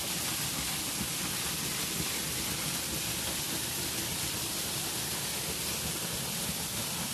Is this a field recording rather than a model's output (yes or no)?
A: yes